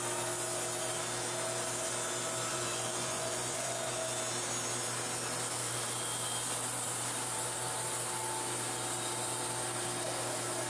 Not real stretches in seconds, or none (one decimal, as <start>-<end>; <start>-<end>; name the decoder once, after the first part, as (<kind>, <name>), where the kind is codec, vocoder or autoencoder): 2.5-3.9 (vocoder, Vocos)